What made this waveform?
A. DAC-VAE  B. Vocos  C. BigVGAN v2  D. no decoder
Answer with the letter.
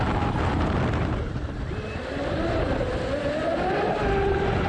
D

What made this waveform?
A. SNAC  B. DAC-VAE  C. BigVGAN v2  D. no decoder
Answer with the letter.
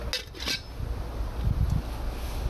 D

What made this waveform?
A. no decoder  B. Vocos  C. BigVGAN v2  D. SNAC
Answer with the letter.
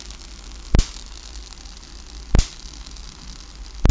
A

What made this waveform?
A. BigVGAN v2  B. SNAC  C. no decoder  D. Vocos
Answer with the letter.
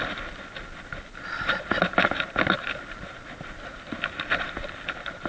C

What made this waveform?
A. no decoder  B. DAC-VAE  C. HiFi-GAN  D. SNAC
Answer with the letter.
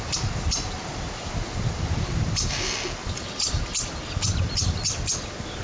A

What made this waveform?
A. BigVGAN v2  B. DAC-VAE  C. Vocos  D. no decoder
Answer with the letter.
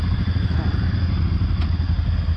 D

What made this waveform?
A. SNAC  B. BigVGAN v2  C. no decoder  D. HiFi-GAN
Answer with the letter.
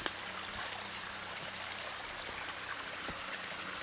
C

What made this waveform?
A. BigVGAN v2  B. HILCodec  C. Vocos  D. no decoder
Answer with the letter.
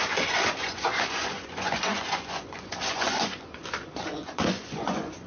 C